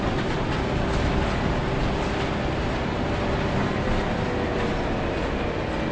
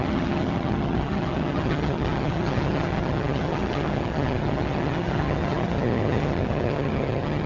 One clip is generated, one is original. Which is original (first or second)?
first